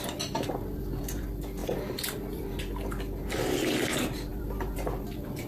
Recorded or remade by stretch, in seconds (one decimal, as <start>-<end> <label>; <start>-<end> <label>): 0.0-1.6 recorded; 1.6-2.6 remade; 2.6-4.3 recorded; 4.3-5.5 remade